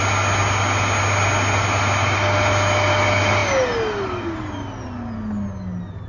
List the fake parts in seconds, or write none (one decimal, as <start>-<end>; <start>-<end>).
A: none